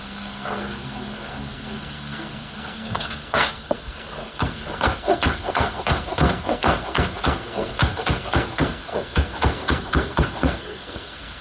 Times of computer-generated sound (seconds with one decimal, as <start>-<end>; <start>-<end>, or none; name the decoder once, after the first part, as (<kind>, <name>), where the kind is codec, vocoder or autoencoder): 0.0-11.4 (codec, SNAC)